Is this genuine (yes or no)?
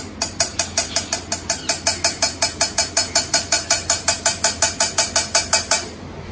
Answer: yes